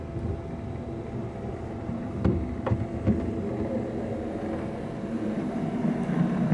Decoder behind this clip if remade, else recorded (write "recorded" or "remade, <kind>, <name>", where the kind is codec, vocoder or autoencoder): recorded